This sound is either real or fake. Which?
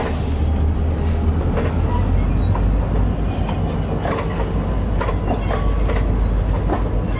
real